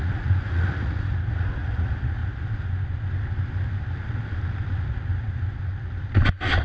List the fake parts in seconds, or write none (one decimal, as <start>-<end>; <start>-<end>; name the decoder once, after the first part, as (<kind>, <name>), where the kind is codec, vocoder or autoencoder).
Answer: 0.0-2.2 (vocoder, Vocos)

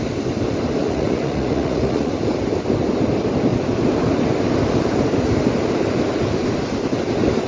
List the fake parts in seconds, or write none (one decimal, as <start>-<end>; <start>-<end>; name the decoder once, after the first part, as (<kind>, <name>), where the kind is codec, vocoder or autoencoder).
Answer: 0.8-2.1 (vocoder, Vocos)

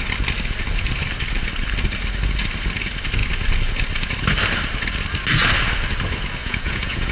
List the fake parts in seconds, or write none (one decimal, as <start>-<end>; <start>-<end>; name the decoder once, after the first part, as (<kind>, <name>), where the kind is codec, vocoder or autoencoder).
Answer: 6.4-7.1 (vocoder, Vocos)

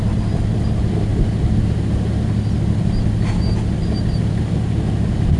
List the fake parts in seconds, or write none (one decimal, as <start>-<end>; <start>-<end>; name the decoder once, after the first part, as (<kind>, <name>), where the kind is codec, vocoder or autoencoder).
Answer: none

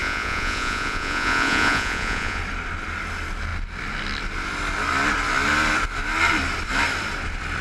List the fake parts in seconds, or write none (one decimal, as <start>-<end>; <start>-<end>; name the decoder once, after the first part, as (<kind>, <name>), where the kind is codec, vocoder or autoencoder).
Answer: 0.0-2.4 (vocoder, Vocos)

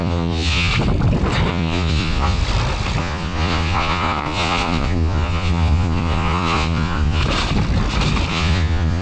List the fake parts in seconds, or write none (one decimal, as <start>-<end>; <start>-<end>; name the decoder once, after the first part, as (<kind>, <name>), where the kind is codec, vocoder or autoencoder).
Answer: 0.0-0.7 (vocoder, Vocos); 1.5-2.4; 3.0-7.2; 8.3-9.0

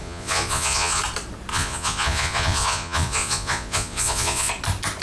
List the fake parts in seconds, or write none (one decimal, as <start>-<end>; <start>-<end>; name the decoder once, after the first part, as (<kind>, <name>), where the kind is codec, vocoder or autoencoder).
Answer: 0.0-1.0 (vocoder, Vocos); 1.5-4.5

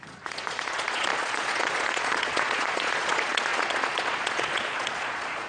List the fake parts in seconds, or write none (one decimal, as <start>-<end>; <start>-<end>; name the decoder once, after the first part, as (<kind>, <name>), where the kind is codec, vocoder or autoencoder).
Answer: 0.0-5.5 (vocoder, Vocos)